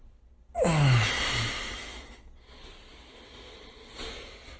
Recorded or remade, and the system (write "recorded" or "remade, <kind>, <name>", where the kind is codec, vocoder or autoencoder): recorded